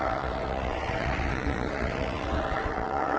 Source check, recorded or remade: remade